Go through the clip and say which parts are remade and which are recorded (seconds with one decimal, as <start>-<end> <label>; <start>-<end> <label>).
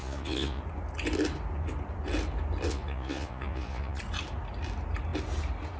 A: 0.0-0.6 remade; 0.6-2.7 recorded; 2.7-4.0 remade; 4.0-5.8 recorded